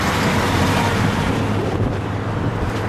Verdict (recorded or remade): remade